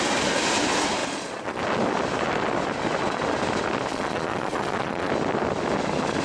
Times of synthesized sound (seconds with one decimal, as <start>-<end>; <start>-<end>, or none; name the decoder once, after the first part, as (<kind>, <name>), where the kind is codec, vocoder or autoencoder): 1.0-1.6 (vocoder, Vocos); 3.9-5.1